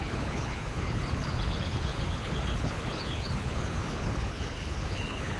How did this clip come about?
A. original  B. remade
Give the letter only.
B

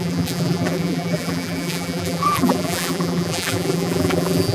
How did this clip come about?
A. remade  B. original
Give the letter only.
A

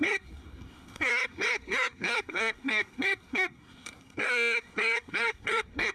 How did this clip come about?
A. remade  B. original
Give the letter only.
A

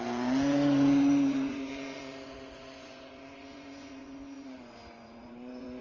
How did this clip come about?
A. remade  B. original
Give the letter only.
A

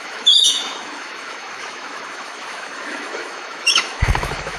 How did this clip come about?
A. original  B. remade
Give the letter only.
B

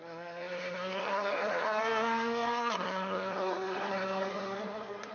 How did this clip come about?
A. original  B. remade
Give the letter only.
B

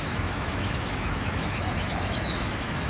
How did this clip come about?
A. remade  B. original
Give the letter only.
A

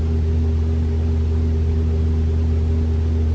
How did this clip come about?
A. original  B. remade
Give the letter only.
A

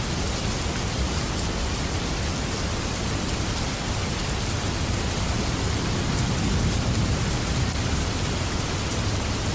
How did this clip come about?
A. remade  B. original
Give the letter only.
B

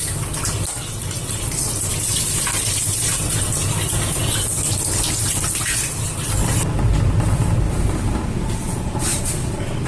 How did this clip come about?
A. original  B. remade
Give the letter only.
A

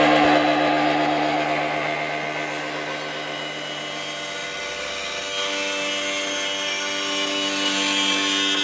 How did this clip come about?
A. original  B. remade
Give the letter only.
A